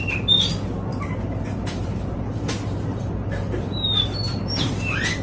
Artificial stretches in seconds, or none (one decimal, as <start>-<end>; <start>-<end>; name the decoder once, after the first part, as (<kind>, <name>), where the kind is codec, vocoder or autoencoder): 0.9-4.0 (vocoder, BigVGAN v2)